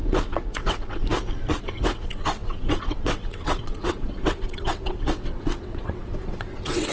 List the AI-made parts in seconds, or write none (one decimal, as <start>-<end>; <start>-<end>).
0.0-1.0; 1.6-6.9